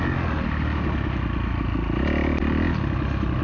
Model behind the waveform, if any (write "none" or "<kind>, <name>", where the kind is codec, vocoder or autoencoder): none